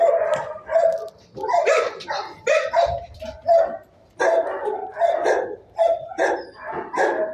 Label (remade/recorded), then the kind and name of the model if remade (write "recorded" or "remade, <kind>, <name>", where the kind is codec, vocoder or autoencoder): remade, vocoder, BigVGAN v2